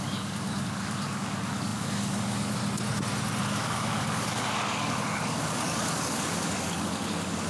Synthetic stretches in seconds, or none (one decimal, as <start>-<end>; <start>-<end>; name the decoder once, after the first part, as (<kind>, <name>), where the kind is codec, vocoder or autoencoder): 0.0-2.6 (codec, DAC); 3.4-7.5